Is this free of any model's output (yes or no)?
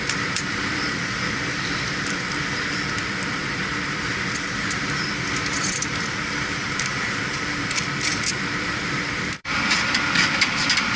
no